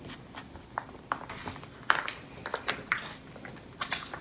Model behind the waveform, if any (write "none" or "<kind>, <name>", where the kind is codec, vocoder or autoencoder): none